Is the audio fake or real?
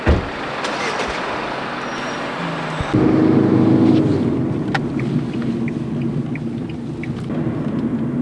real